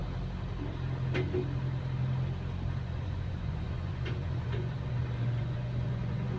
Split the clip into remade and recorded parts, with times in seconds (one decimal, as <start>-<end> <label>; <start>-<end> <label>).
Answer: 0.0-2.8 recorded; 2.8-6.4 remade